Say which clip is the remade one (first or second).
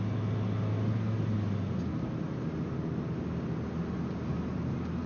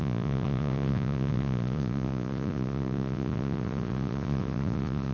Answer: second